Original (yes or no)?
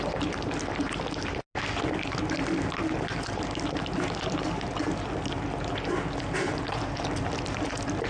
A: yes